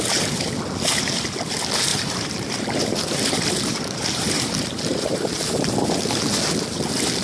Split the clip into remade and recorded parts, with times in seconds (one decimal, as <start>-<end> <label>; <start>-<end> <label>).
0.0-1.9 recorded; 1.9-6.2 remade; 6.2-7.2 recorded